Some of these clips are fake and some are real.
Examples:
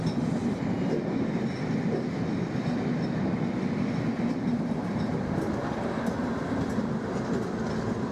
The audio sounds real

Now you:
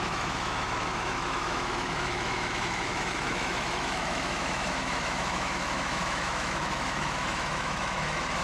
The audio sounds fake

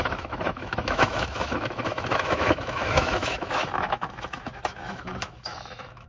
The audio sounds fake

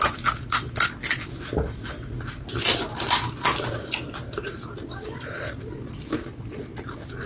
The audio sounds real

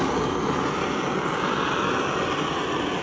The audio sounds real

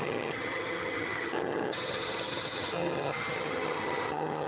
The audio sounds fake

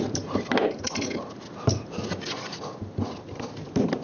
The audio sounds real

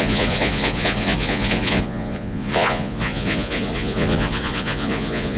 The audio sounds fake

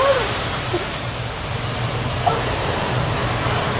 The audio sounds fake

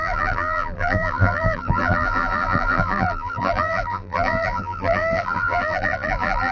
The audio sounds fake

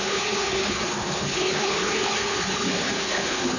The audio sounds fake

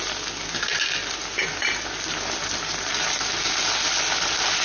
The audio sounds real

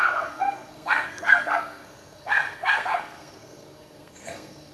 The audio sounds fake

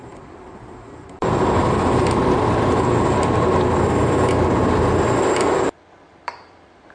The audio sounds fake